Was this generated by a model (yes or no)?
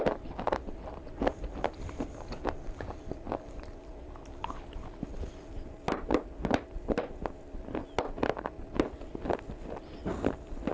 no